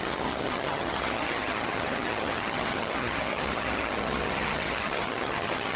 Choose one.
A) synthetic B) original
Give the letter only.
A